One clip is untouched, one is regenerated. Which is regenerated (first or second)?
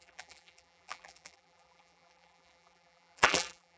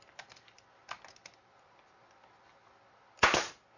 first